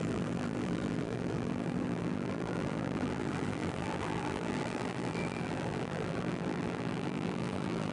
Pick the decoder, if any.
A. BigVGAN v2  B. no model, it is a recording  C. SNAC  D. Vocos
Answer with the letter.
A